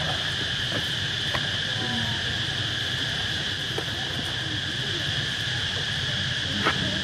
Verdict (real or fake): real